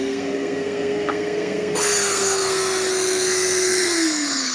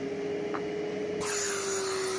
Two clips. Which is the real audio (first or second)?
second